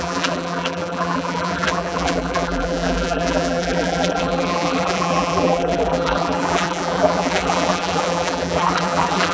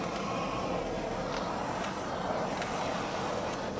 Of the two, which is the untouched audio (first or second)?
second